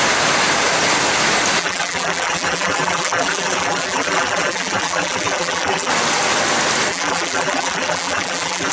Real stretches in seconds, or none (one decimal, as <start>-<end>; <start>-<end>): 0.0-1.6; 5.9-6.9